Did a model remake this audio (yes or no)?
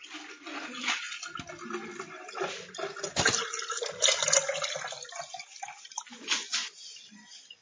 no